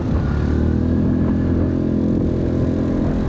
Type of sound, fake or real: real